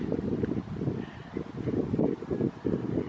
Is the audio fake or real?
real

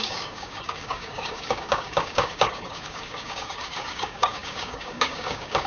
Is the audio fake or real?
fake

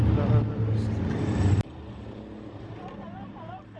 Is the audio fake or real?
real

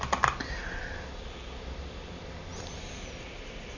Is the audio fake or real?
real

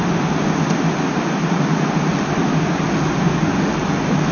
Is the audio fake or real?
real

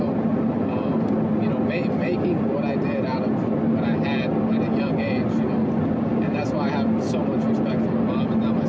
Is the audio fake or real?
real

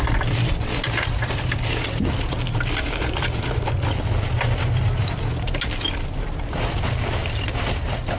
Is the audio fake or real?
real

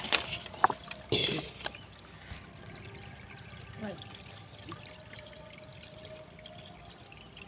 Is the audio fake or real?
real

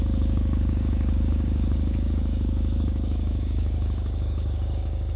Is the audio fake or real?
fake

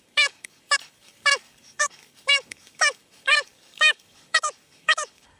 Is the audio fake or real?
fake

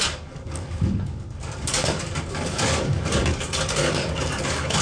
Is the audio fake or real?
fake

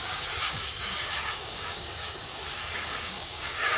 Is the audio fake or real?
fake